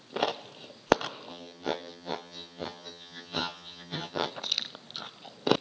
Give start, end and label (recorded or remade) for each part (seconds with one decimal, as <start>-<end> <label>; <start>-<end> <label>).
0.0-1.3 recorded; 1.3-4.3 remade; 4.3-5.6 recorded